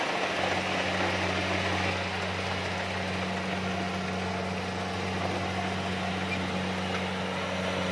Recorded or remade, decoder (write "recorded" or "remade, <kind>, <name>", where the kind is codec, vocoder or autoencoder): recorded